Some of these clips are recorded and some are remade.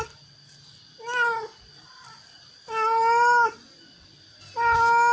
recorded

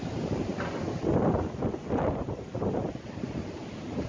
recorded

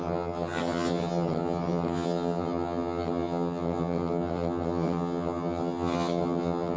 remade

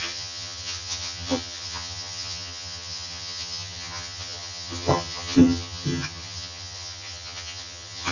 remade